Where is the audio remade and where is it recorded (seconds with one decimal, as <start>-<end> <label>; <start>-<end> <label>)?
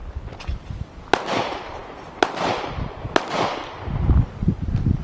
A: 0.0-5.0 recorded